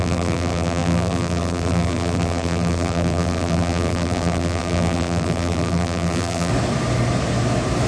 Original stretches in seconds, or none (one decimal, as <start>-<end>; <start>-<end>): 6.5-7.9